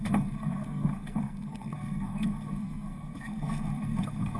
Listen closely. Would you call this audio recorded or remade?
remade